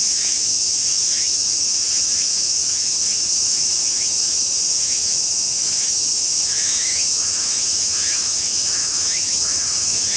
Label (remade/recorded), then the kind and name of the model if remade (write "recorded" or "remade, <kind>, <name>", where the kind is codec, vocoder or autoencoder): remade, autoencoder, DAC-VAE